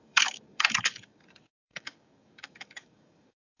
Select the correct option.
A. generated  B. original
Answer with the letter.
A